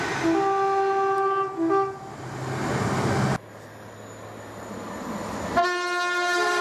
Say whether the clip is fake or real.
real